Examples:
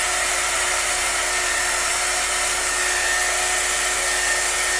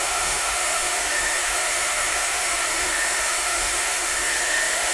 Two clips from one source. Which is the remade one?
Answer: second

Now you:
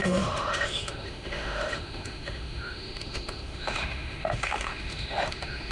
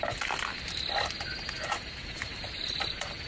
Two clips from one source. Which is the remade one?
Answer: first